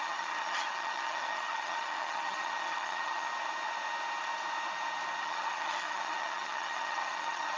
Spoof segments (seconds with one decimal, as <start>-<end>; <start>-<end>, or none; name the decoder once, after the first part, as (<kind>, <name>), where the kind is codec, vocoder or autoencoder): 0.0-3.3 (vocoder, HiFi-GAN); 5.2-7.6